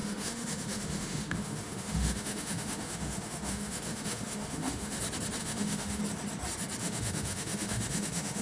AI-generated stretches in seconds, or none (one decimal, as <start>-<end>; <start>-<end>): 0.0-5.0; 5.4-6.0; 6.8-8.4